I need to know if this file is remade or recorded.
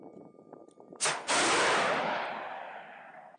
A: recorded